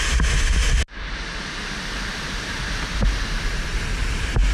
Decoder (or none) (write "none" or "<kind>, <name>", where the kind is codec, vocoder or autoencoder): none